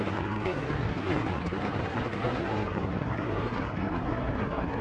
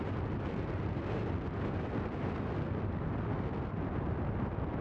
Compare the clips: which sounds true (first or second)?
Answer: second